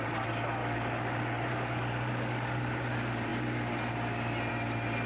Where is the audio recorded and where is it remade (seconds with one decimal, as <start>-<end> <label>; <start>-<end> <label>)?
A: 0.0-0.6 recorded; 0.6-2.9 remade; 2.9-5.1 recorded

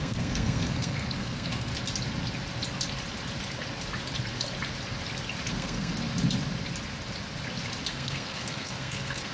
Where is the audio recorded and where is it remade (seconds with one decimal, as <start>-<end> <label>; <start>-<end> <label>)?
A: 0.0-1.7 remade; 1.7-5.5 recorded; 5.5-5.9 remade; 5.9-7.9 recorded; 7.9-9.3 remade

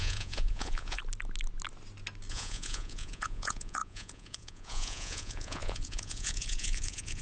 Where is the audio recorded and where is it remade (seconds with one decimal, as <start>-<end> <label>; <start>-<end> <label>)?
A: 0.0-1.0 remade; 1.0-2.3 recorded; 2.3-7.2 remade

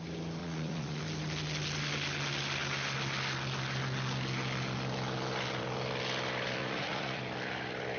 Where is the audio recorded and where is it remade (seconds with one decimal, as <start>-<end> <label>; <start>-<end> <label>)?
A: 0.0-0.4 recorded; 0.4-1.0 remade; 1.0-6.6 recorded; 6.6-7.2 remade; 7.2-8.0 recorded